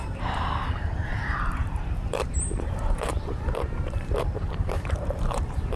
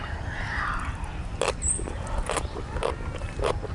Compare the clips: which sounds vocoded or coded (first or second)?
first